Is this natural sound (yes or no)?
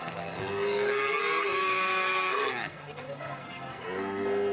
no